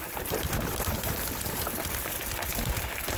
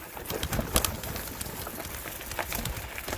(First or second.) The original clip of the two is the second